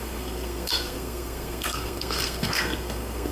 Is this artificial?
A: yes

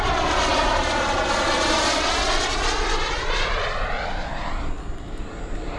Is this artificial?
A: no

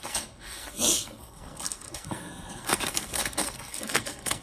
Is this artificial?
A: yes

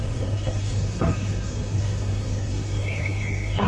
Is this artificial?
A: yes